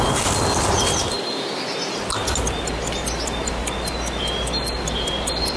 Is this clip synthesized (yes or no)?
no